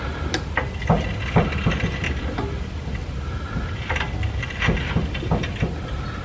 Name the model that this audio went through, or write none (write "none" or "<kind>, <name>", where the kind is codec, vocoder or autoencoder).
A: none